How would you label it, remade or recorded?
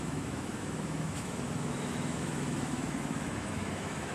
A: remade